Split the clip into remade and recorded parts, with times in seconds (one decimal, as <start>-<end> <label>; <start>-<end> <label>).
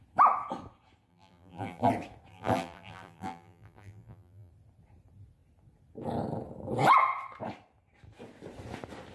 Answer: 0.0-1.1 recorded; 1.1-1.9 remade; 1.9-2.3 recorded; 2.3-4.5 remade; 4.5-9.1 recorded